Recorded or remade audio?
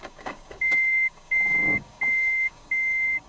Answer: remade